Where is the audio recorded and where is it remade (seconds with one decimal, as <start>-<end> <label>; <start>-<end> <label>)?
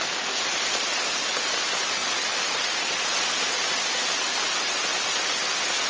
0.0-5.9 recorded